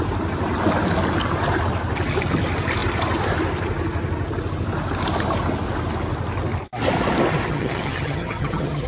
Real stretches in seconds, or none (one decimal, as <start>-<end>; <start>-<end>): 0.0-7.5